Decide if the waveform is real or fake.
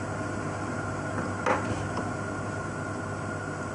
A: real